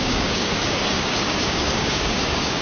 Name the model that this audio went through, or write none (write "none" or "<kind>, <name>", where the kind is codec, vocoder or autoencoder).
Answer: codec, DAC